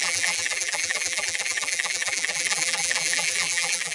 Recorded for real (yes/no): no